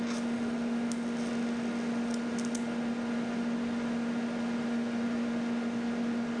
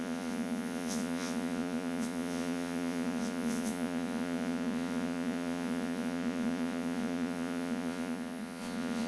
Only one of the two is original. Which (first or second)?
first